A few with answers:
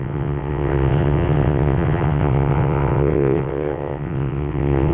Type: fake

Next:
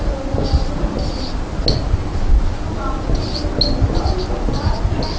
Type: real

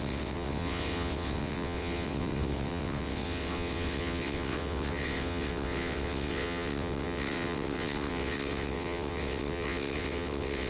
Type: fake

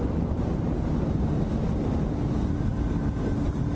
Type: real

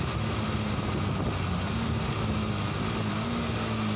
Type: real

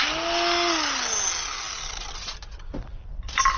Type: real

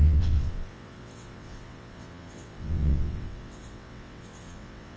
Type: fake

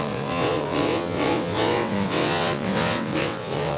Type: fake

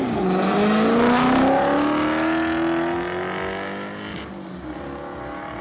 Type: real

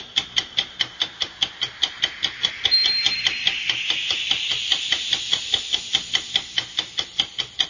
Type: real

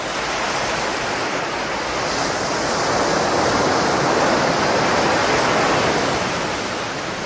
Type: real